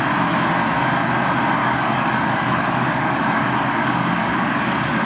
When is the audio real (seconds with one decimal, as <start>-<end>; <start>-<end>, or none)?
0.0-1.6